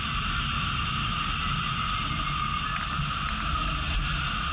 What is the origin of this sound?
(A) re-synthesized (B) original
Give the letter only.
B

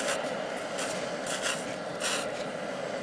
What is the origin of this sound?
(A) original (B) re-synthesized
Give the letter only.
A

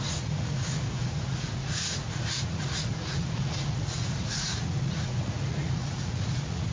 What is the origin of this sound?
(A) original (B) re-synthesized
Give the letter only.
B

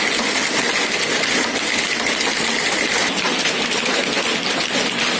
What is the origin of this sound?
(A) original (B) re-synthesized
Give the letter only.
A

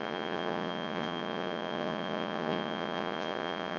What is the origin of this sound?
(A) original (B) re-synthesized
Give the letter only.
B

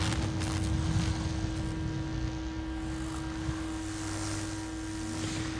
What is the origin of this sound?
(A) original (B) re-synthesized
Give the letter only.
A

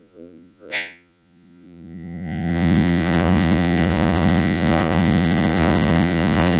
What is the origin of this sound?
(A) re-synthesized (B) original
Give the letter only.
A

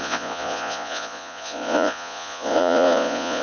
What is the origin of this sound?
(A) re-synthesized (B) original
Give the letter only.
A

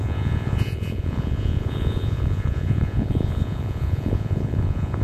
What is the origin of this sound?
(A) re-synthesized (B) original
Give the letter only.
A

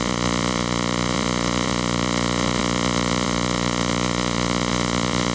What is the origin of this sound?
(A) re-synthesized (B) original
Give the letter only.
A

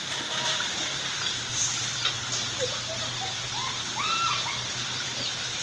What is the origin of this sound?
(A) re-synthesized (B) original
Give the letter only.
B